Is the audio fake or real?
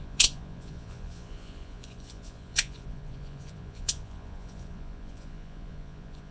fake